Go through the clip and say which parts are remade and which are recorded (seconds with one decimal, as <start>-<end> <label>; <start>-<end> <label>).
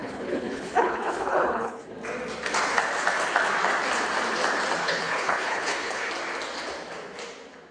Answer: 0.0-1.8 remade; 1.8-4.8 recorded; 4.8-6.1 remade; 6.1-7.7 recorded